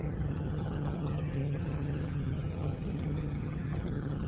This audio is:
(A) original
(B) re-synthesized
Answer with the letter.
B